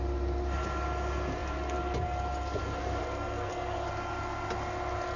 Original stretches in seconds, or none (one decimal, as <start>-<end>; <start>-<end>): 0.0-3.0; 3.5-5.2